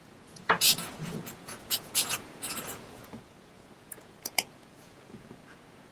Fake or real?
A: fake